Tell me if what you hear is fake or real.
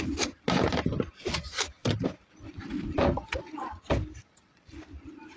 real